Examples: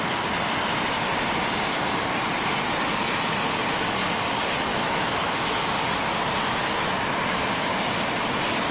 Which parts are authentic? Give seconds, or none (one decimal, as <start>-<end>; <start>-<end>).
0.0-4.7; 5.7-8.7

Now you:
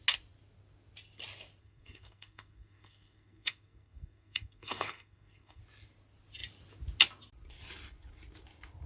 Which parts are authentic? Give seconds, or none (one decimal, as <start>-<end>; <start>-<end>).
0.0-1.6; 5.6-8.9

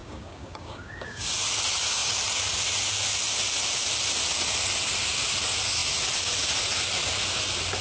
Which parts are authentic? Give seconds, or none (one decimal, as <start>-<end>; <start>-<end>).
1.3-7.8

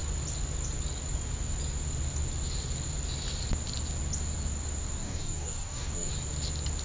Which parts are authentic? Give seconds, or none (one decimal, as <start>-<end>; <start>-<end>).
0.0-5.0; 6.1-6.8

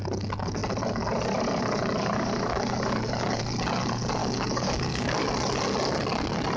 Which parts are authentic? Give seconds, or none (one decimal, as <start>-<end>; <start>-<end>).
0.0-2.0; 3.4-4.2; 5.2-6.6

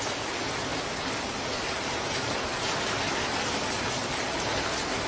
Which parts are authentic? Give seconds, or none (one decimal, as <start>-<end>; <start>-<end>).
0.0-5.1